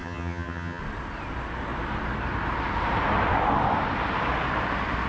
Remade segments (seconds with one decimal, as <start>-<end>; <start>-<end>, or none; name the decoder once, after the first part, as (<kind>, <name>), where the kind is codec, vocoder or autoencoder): 0.0-0.8 (vocoder, HiFi-GAN)